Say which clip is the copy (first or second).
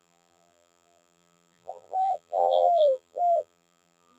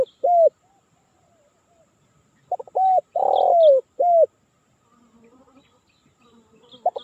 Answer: first